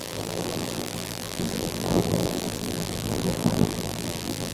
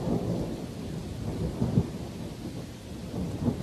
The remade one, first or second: first